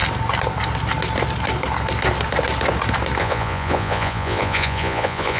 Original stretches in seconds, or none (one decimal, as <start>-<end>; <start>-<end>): 0.0-3.2